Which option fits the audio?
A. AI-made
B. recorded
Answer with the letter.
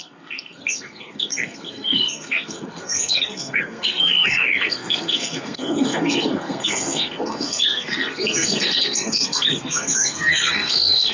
A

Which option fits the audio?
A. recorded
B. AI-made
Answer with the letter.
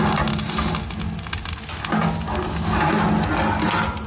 A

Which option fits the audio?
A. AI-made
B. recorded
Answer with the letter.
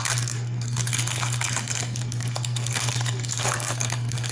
A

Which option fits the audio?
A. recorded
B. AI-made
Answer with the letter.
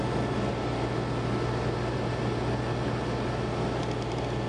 A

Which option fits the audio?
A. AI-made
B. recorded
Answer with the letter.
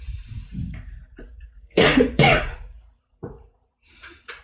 A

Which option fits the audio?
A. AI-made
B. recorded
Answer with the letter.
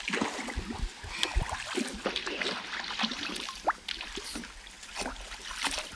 B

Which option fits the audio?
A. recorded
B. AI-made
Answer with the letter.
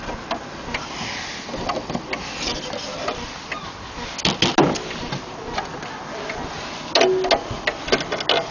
A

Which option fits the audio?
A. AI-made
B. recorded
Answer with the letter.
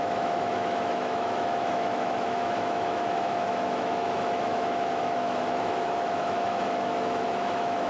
A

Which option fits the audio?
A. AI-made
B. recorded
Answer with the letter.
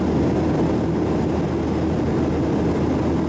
B